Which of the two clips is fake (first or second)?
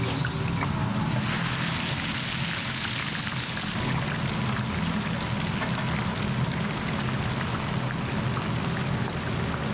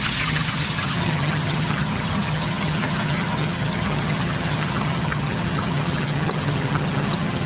second